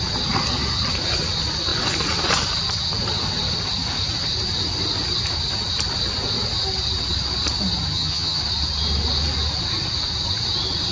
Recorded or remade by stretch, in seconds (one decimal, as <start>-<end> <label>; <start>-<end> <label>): 0.0-7.9 recorded; 7.9-8.4 remade; 8.4-10.9 recorded